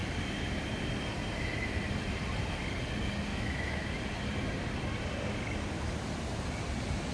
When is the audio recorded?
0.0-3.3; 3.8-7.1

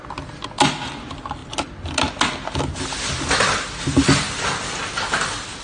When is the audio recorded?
0.0-5.6

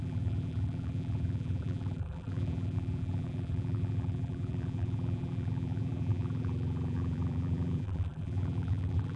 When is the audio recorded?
none